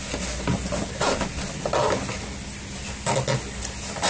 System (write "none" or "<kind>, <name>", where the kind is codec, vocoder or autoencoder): none